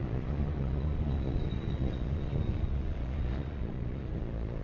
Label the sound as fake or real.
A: fake